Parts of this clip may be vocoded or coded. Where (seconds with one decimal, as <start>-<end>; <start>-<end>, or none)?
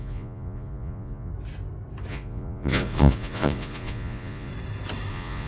0.0-1.3; 2.1-4.5; 5.1-5.5